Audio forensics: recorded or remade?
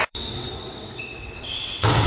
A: remade